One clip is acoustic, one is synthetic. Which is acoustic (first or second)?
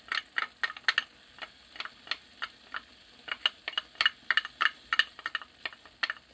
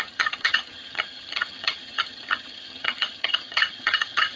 first